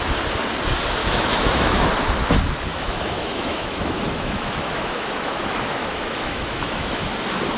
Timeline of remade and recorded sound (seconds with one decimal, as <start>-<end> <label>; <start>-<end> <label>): 0.0-1.0 recorded; 1.0-1.9 remade; 1.9-2.7 recorded; 2.7-7.0 remade; 7.0-7.6 recorded

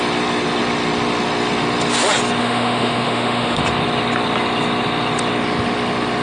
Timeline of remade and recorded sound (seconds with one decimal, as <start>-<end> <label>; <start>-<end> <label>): 0.0-2.4 recorded; 2.4-3.6 remade; 3.6-6.2 recorded

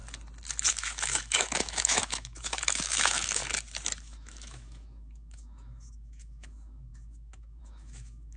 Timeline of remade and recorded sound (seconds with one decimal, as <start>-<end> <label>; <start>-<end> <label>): 0.0-0.7 recorded; 0.7-3.4 remade; 3.4-4.0 recorded; 4.0-8.4 remade

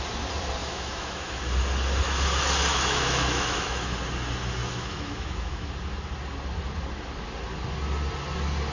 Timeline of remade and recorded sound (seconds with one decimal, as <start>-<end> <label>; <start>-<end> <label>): 0.0-0.6 recorded; 0.6-1.4 remade; 1.4-2.7 recorded; 2.7-4.0 remade; 4.0-4.6 recorded; 4.6-5.7 remade; 5.7-8.7 recorded

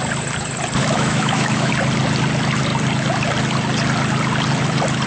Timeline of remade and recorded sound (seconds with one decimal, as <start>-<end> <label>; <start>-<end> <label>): 0.0-0.8 recorded; 0.8-1.7 remade; 1.7-5.1 recorded

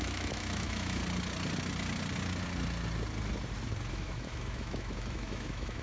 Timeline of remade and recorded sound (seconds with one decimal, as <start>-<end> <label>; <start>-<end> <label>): 0.0-1.0 remade; 1.0-3.9 recorded; 3.9-5.8 remade